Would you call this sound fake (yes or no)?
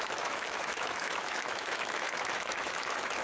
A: yes